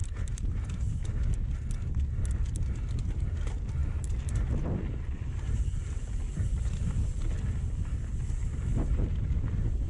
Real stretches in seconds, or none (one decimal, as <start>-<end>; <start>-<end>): 1.3-9.9